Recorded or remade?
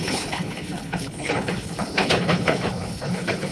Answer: remade